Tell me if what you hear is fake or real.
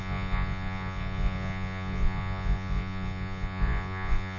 fake